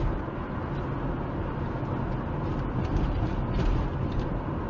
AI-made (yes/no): no